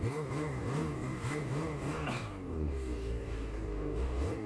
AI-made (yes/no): yes